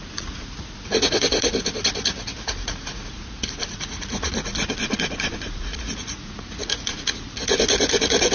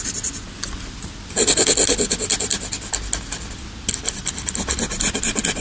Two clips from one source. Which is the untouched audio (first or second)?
second